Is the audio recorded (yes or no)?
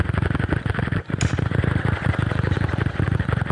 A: yes